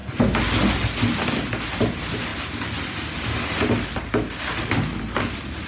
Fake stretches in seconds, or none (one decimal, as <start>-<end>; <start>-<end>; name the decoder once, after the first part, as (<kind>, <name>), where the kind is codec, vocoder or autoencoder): none